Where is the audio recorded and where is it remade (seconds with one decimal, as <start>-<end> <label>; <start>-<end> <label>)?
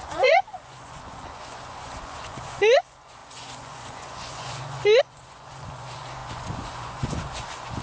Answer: 0.0-7.8 remade